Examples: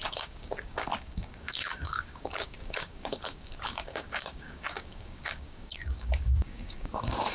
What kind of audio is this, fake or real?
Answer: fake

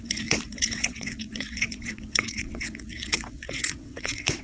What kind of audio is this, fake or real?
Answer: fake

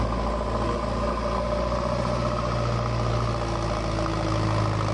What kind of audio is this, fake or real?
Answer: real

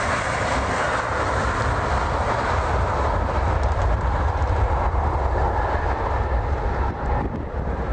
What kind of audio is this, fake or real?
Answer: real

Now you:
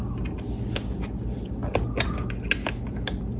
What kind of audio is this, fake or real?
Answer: real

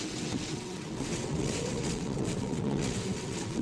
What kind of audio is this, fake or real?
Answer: fake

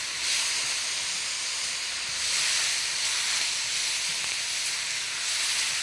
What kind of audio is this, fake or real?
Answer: real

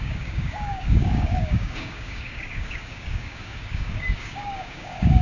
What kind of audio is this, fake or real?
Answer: fake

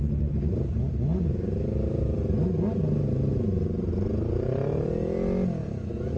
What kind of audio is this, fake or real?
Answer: real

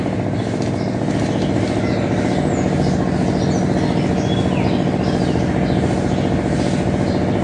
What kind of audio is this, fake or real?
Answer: real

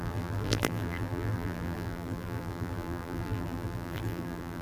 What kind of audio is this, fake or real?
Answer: fake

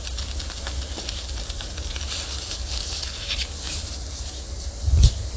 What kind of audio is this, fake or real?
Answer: real